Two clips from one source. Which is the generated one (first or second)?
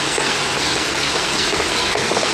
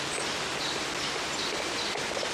first